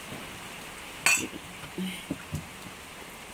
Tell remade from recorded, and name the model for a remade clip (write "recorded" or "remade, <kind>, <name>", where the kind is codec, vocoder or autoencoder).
recorded